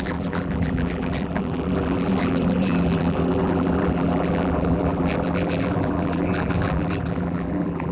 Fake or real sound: fake